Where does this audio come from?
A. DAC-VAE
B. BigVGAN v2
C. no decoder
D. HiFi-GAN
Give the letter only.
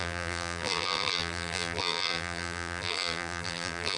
B